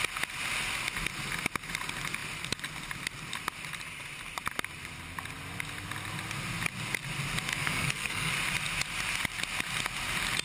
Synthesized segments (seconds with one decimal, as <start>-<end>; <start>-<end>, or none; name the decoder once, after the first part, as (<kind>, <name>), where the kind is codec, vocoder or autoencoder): 7.5-8.3 (codec, SNAC)